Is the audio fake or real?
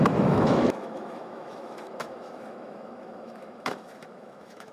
fake